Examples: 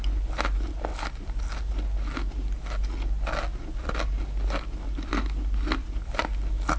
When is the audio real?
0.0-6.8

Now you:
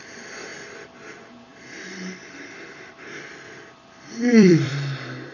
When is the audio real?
0.0-1.5; 4.7-5.3

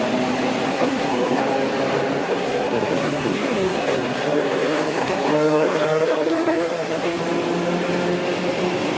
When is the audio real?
0.0-0.7; 1.4-2.2; 7.2-9.0

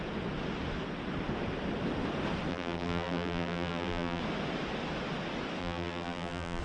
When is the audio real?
0.0-2.5; 4.2-5.6

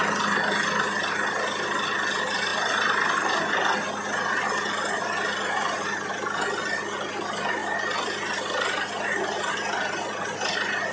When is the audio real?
0.0-10.9

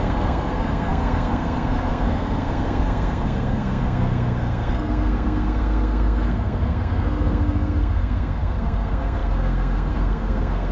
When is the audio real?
none

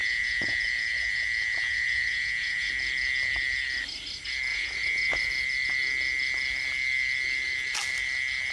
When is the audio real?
2.7-4.5; 5.3-8.5